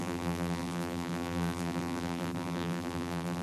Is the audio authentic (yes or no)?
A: no